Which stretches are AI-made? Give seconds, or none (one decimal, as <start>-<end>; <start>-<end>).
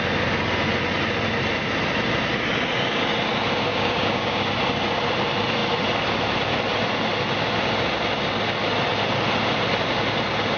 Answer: 3.7-4.5